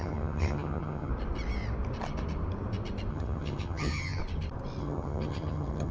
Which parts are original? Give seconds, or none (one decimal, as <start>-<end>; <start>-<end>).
1.1-3.1; 4.2-4.8